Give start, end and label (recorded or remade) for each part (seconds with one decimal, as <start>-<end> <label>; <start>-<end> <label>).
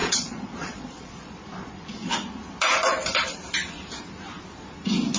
0.0-2.1 remade; 2.1-5.2 recorded